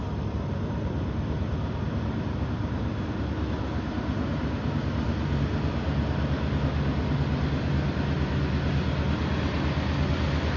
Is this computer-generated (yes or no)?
no